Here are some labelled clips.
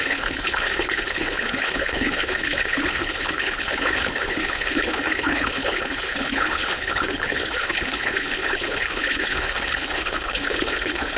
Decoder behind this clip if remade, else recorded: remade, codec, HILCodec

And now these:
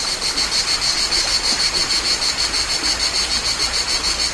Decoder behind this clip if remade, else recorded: recorded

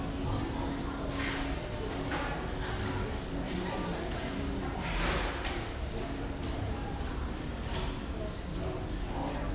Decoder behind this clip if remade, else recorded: recorded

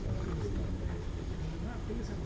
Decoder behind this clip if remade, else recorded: recorded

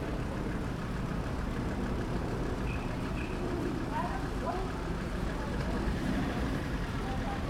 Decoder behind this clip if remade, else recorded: remade, vocoder, BigVGAN v2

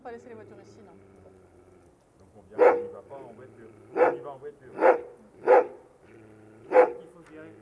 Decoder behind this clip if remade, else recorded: recorded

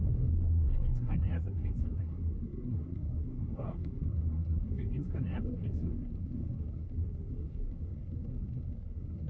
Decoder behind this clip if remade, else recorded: remade, codec, SNAC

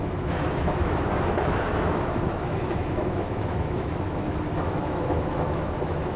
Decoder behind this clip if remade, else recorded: remade, autoencoder, DAC-VAE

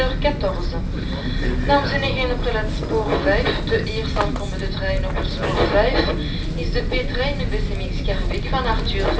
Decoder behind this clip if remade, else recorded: recorded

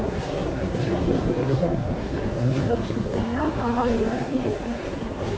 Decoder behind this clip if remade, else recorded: remade, codec, SNAC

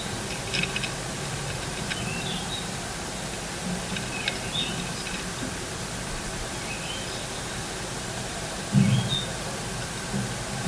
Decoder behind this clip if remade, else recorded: recorded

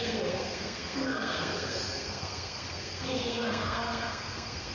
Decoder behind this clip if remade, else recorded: remade, codec, SNAC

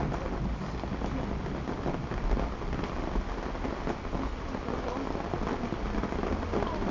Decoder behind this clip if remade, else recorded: recorded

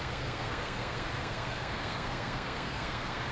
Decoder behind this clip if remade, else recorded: remade, codec, SNAC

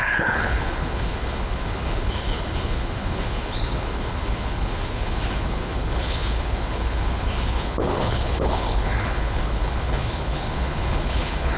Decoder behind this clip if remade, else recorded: remade, codec, HILCodec